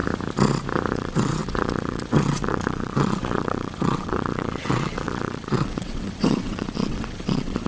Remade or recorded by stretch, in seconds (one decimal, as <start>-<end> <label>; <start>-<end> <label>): 0.0-0.9 recorded; 0.9-7.7 remade